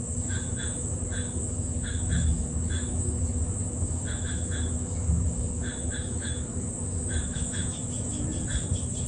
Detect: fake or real fake